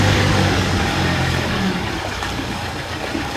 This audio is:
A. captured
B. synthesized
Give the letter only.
B